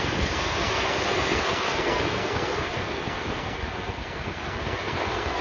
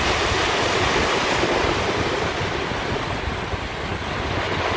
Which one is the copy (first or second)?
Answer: first